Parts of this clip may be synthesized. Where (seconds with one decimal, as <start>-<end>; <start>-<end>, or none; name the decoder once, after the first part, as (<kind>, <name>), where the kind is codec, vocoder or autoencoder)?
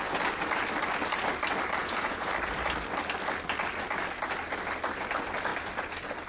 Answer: 1.8-2.3 (vocoder, Vocos)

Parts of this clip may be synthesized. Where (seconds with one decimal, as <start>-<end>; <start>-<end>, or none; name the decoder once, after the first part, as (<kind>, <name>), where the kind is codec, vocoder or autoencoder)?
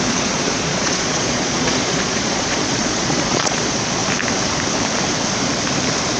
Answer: 0.0-4.0 (vocoder, Vocos)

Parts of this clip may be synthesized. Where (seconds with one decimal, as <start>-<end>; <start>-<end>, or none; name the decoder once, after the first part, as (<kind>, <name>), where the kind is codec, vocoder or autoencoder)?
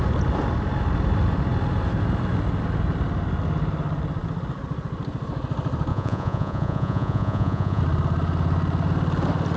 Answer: 5.9-7.8 (vocoder, Vocos)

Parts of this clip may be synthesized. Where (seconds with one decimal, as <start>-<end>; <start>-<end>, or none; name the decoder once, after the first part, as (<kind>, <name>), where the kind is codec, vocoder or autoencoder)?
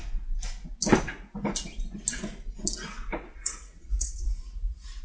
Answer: 3.4-5.0 (vocoder, Vocos)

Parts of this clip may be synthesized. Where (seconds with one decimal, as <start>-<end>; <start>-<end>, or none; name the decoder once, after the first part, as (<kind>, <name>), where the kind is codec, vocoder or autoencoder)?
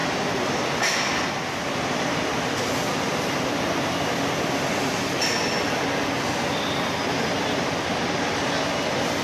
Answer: none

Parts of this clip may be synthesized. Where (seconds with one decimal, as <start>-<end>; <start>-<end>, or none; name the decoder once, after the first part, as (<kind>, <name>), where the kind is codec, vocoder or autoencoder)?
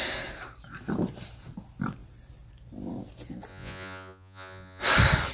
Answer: 3.5-4.8 (vocoder, Vocos)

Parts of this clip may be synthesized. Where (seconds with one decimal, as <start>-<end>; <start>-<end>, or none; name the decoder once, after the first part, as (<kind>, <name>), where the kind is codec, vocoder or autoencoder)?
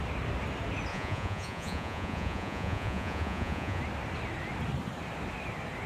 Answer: 0.9-3.8 (vocoder, Vocos)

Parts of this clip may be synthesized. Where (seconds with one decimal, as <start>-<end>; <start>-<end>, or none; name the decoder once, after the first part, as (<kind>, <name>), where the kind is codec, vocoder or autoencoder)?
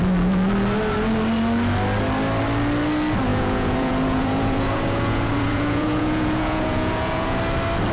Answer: 3.3-7.4 (vocoder, Vocos)